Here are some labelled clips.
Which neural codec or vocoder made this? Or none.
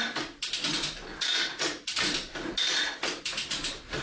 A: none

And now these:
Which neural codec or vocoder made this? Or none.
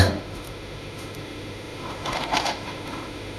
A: autoencoder, DAC-VAE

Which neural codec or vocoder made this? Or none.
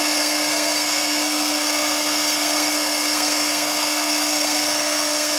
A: codec, SNAC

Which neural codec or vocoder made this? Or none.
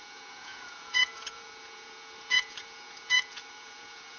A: vocoder, Vocos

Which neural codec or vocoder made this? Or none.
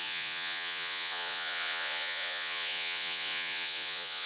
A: vocoder, Vocos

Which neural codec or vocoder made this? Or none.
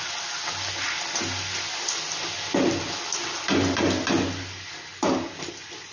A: none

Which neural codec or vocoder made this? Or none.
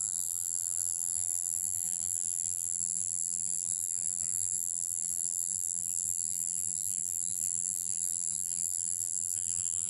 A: vocoder, BigVGAN v2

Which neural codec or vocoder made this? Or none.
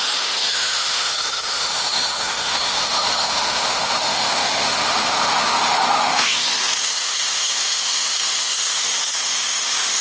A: autoencoder, DAC-VAE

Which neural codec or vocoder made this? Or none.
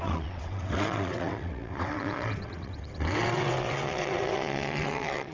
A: vocoder, WaveNeXt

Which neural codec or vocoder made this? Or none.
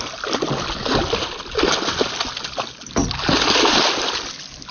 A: none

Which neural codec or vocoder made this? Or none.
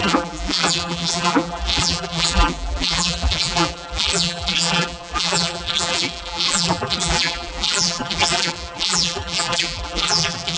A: vocoder, BigVGAN v2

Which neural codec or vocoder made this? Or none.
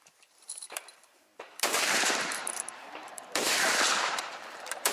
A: vocoder, BigVGAN v2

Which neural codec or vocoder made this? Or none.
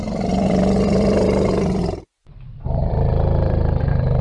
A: vocoder, BigVGAN v2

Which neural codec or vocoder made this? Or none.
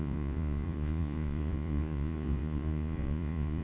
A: vocoder, Vocos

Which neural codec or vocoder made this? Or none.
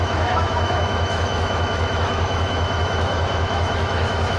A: autoencoder, DAC-VAE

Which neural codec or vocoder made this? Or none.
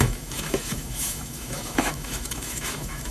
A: autoencoder, DAC-VAE